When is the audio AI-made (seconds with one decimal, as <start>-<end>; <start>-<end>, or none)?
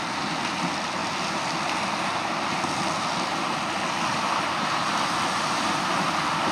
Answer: none